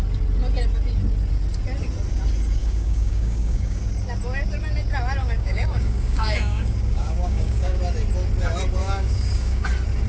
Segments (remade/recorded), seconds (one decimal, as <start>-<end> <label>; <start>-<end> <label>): 0.0-2.6 recorded; 2.6-3.8 remade; 3.8-5.2 recorded; 5.2-7.8 remade; 7.8-8.8 recorded; 8.8-9.7 remade; 9.7-10.1 recorded